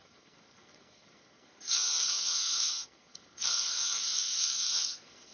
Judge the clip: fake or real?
fake